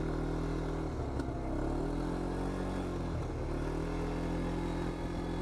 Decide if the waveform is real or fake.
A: real